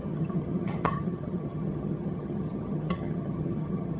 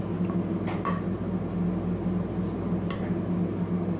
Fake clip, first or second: first